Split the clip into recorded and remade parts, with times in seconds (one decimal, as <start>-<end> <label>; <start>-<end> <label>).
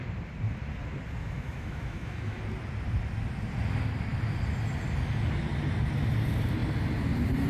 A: 0.0-1.2 recorded; 1.2-2.4 remade; 2.4-7.5 recorded